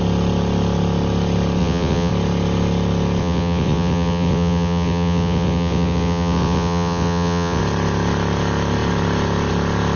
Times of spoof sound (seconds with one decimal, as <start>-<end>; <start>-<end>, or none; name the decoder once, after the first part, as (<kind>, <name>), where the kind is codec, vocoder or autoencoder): 1.6-2.1 (vocoder, WaveNeXt); 3.2-7.6